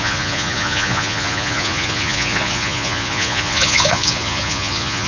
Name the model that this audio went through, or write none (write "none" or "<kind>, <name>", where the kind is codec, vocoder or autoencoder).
vocoder, Vocos